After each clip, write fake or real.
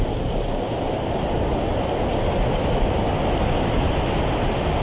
real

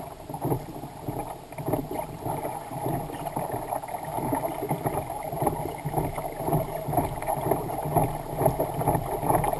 real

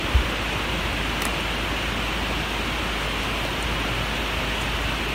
real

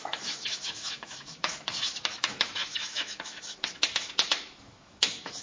fake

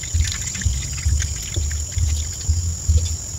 real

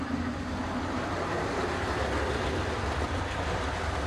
real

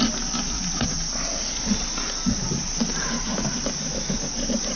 real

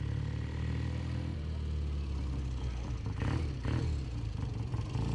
real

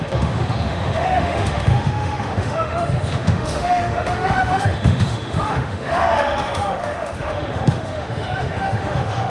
fake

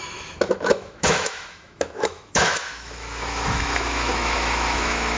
fake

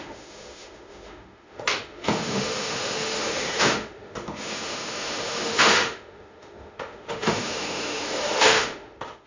fake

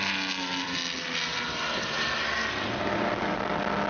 real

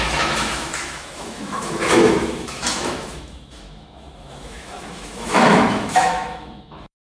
fake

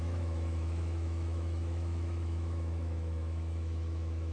fake